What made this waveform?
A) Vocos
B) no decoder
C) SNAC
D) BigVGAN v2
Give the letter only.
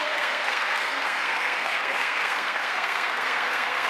C